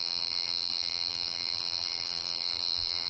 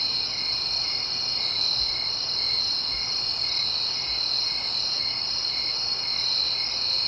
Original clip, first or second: second